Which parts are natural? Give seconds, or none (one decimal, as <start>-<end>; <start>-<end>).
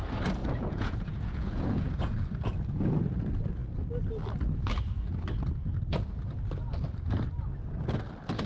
0.0-0.4; 1.9-8.5